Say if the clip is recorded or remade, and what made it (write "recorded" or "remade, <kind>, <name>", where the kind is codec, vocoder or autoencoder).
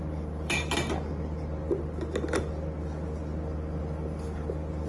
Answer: recorded